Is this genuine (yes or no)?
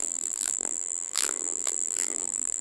no